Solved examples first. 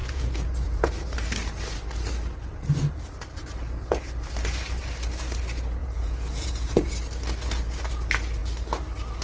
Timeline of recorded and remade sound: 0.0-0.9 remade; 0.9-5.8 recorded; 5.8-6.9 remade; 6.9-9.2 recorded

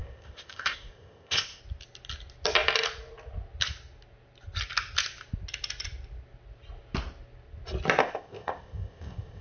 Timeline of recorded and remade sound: 0.0-1.6 remade; 1.6-8.0 recorded; 8.0-9.4 remade

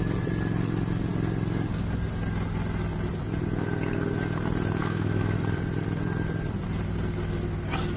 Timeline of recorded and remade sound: 0.0-4.8 recorded; 4.8-5.4 remade; 5.4-8.0 recorded

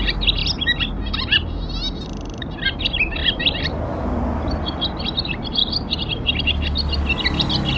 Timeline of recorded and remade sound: 0.0-0.4 recorded; 0.4-1.6 remade; 1.6-3.2 recorded; 3.2-3.8 remade; 3.8-7.8 recorded

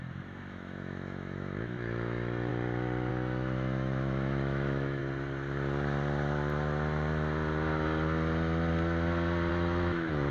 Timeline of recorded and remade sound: 0.0-2.5 remade; 2.5-3.1 recorded; 3.1-5.0 remade; 5.0-9.5 recorded; 9.5-10.3 remade

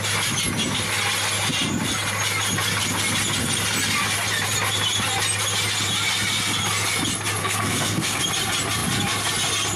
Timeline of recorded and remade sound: 0.0-7.4 recorded; 7.4-8.2 remade; 8.2-9.8 recorded

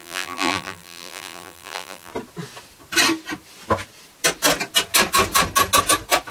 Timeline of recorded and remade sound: 0.0-2.1 remade; 2.1-6.3 recorded